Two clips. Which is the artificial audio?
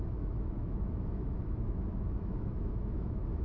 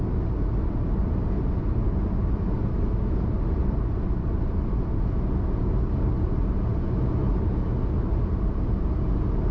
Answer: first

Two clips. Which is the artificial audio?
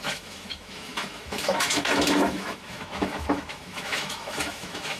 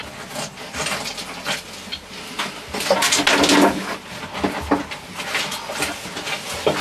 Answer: first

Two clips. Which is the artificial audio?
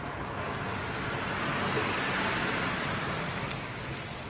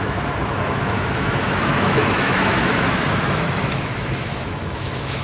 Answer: second